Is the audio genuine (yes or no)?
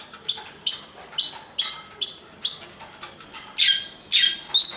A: yes